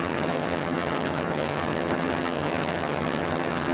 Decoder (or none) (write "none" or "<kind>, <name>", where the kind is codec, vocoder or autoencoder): vocoder, HiFi-GAN